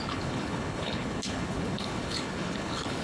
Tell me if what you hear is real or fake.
fake